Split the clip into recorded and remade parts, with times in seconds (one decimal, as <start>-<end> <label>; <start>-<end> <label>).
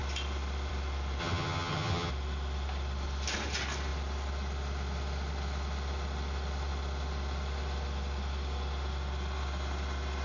0.0-1.2 recorded; 1.2-2.1 remade; 2.1-10.2 recorded